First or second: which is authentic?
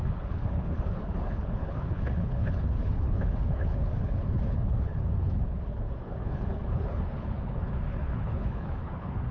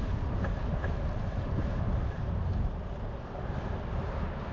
second